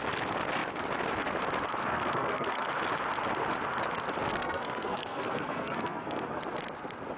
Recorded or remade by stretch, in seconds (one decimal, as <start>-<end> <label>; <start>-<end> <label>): 0.0-1.8 recorded; 1.8-2.7 remade; 2.7-4.3 recorded; 4.3-6.4 remade; 6.4-7.2 recorded